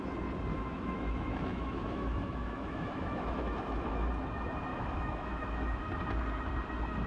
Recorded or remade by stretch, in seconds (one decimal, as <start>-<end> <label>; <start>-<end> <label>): 0.0-0.5 recorded; 0.5-4.1 remade; 4.1-4.7 recorded; 4.7-5.8 remade; 5.8-7.1 recorded